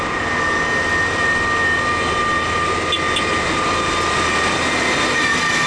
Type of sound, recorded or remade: recorded